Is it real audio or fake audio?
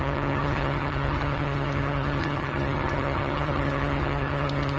fake